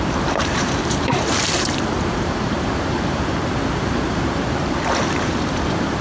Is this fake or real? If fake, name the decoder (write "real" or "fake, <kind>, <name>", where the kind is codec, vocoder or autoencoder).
fake, vocoder, BigVGAN v2